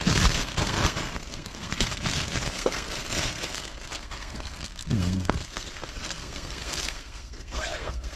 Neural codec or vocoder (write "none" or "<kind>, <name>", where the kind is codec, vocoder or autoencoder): codec, SNAC